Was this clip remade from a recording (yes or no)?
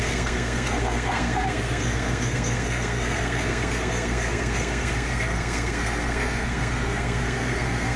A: yes